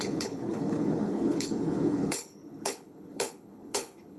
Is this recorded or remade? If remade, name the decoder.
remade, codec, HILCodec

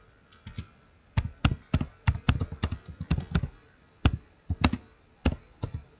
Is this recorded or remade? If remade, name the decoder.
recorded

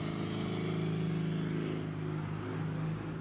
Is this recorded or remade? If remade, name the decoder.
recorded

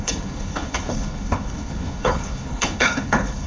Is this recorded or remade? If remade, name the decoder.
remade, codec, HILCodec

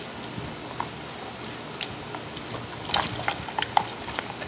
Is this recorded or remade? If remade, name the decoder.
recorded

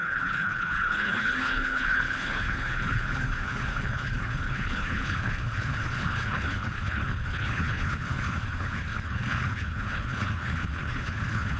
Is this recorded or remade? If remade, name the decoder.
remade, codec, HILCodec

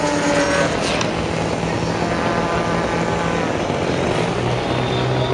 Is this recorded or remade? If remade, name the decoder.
recorded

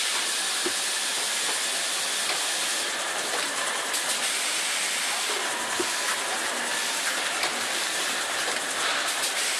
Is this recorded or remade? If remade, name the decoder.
recorded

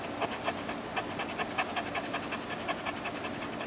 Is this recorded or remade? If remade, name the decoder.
recorded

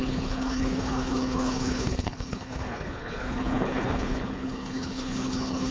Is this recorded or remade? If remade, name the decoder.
remade, codec, HILCodec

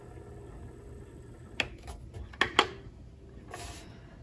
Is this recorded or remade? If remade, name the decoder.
recorded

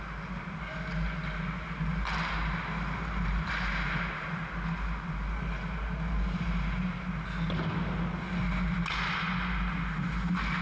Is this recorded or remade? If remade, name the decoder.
recorded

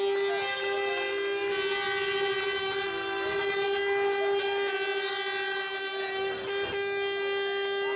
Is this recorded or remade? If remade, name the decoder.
recorded